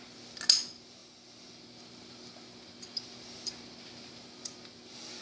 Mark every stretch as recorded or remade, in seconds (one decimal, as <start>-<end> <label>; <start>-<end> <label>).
0.0-5.2 recorded